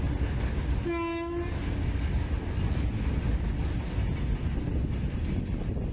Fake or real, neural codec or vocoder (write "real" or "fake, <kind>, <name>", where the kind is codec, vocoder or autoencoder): real